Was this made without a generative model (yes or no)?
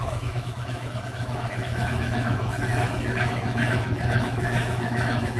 no